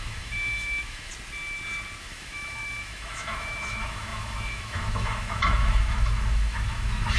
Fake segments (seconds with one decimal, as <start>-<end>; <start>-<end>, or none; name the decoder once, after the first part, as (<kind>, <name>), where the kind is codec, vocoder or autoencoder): 0.0-1.1 (autoencoder, DAC-VAE); 2.0-7.2